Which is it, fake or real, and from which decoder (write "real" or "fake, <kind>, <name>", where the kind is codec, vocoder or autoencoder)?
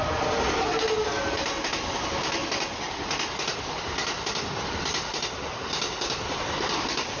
real